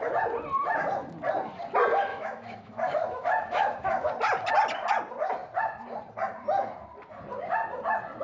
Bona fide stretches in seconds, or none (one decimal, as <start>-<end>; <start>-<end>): 0.0-2.1; 4.1-8.2